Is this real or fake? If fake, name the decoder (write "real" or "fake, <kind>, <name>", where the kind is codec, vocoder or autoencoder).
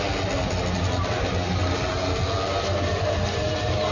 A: real